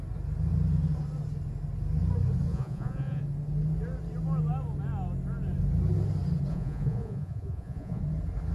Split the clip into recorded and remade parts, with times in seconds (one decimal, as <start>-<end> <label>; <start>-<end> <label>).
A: 0.0-2.5 recorded; 2.5-3.2 remade; 3.2-6.5 recorded; 6.5-8.0 remade; 8.0-8.5 recorded